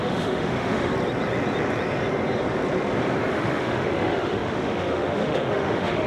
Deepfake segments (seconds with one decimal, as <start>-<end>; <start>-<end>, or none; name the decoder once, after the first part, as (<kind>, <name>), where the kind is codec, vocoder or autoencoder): 0.0-0.9 (autoencoder, DAC-VAE); 3.3-6.1